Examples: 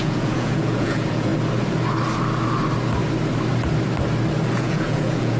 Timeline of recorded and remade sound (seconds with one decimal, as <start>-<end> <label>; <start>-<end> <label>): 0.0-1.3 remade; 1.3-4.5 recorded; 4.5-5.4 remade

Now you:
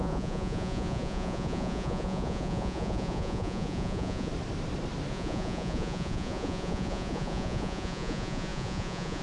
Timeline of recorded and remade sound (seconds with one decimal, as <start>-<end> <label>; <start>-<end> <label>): 0.0-4.3 remade; 4.3-5.1 recorded; 5.1-9.2 remade

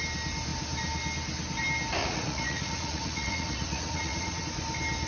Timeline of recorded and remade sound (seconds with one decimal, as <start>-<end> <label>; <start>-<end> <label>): 0.0-2.0 recorded; 2.0-4.4 remade; 4.4-5.1 recorded

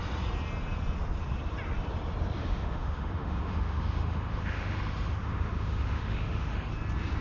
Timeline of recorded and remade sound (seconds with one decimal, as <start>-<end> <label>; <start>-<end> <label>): 0.0-2.4 recorded; 2.4-6.7 remade; 6.7-7.2 recorded

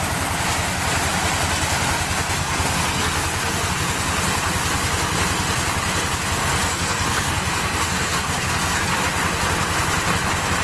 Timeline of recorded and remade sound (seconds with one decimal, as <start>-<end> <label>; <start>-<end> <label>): 0.0-2.4 recorded; 2.4-3.7 remade; 3.7-6.4 recorded; 6.4-9.0 remade; 9.0-10.6 recorded

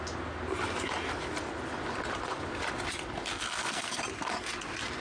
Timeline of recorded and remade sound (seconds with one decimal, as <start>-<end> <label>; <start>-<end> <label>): 0.0-3.3 recorded; 3.3-4.0 remade; 4.0-5.0 recorded